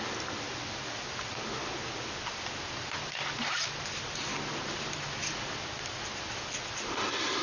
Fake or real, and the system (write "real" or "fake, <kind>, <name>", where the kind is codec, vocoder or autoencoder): real